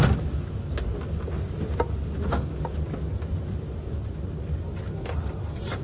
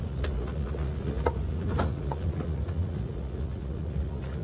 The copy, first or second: second